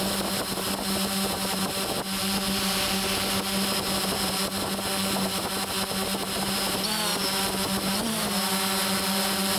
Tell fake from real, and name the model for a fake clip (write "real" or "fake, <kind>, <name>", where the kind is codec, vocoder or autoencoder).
real